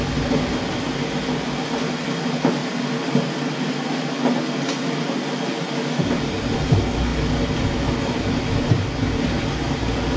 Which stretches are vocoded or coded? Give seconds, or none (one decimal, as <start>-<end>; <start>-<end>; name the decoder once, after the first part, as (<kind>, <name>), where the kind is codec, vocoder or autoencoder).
none